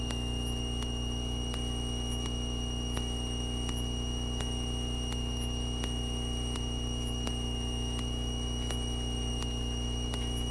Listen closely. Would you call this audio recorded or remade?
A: remade